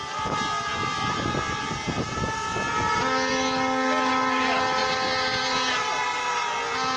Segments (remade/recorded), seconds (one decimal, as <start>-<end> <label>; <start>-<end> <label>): 0.0-7.0 recorded